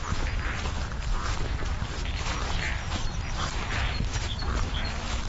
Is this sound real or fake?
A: fake